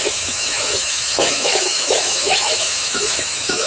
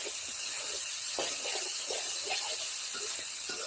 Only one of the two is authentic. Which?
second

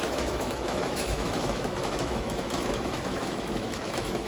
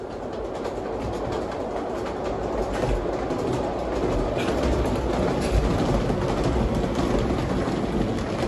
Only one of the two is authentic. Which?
second